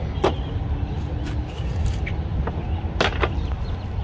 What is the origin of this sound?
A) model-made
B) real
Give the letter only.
B